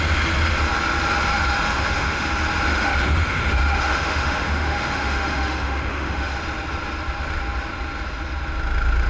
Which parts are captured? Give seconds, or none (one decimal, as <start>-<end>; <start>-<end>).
0.0-1.3; 2.3-2.7; 6.3-9.1